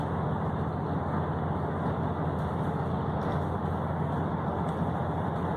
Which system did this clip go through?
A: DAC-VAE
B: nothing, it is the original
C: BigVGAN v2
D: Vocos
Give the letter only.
B